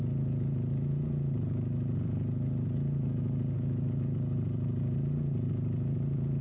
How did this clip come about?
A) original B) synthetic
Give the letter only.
B